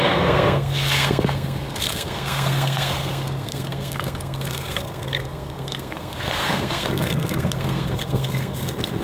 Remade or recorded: remade